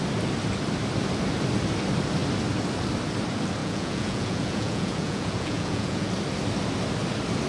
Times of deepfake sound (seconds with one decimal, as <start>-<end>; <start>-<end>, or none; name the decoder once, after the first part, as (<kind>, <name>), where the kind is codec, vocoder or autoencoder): 3.6-6.1 (vocoder, Vocos)